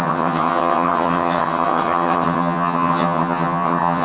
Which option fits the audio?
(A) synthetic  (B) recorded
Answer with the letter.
A